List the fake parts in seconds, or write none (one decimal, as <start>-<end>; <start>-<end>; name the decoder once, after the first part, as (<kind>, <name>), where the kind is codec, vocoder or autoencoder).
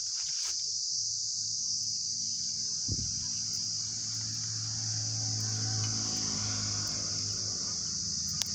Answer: none